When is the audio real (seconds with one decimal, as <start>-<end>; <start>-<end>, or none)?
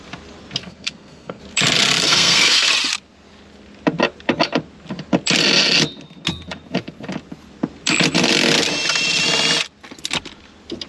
0.0-0.6; 1.4-2.1; 2.7-10.9